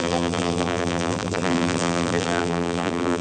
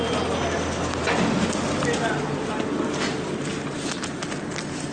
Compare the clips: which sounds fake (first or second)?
first